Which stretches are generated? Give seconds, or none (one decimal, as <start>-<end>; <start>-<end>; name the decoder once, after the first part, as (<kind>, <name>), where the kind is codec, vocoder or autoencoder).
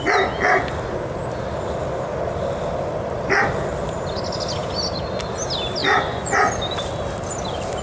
5.8-6.5 (vocoder, Vocos)